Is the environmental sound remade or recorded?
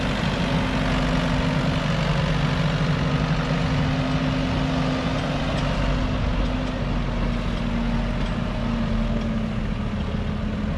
recorded